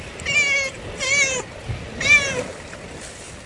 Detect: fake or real real